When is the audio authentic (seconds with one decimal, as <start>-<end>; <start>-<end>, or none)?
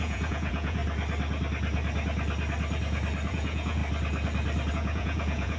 0.8-3.3; 3.8-4.7